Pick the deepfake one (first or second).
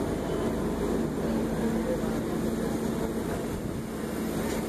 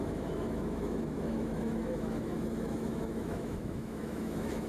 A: second